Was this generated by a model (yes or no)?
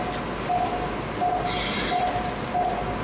no